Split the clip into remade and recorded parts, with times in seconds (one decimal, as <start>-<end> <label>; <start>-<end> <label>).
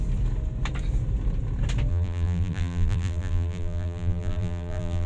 0.0-1.9 recorded; 1.9-5.1 remade